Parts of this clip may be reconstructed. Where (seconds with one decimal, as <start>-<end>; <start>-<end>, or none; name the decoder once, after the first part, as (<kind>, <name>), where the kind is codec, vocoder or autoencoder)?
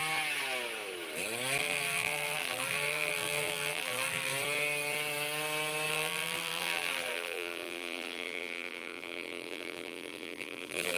1.6-4.3 (vocoder, BigVGAN v2); 5.9-11.0